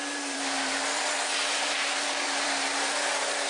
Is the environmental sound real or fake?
fake